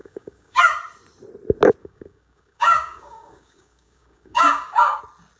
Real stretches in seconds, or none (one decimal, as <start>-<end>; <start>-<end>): 0.6-1.8; 5.0-5.4